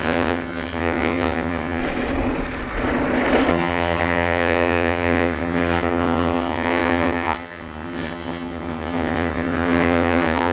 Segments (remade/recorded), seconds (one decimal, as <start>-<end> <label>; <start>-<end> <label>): 0.0-1.8 remade; 1.8-3.5 recorded; 3.5-10.5 remade